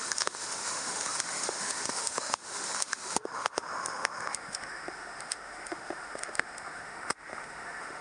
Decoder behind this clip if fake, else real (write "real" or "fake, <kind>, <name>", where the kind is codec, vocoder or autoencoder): fake, autoencoder, DAC-VAE